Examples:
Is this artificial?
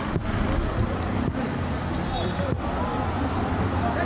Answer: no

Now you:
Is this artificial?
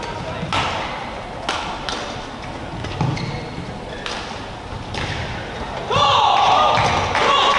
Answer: no